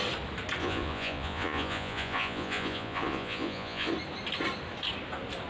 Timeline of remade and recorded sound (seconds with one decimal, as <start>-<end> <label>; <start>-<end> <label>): 0.0-0.6 recorded; 0.6-3.9 remade; 3.9-5.5 recorded